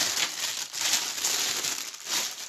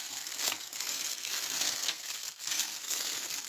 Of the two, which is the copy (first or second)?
second